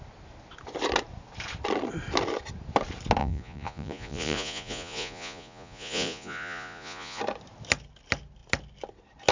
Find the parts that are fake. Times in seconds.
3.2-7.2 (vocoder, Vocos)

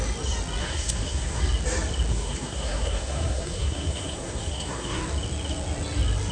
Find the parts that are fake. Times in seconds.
0.6-1.4 (codec, SNAC); 2.1-5.0

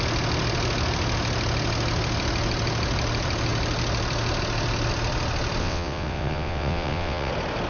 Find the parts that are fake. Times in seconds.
5.6-7.3 (vocoder, WaveNeXt)

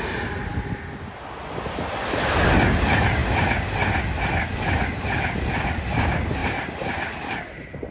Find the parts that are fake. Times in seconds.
none

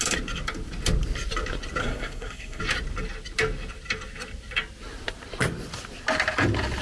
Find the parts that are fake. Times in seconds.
1.8-2.6 (codec, SNAC)